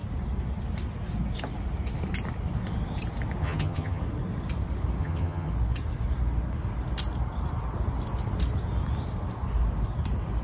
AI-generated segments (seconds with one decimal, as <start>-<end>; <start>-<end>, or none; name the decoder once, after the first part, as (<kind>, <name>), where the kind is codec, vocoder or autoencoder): 3.4-4.0 (vocoder, HiFi-GAN); 5.0-5.5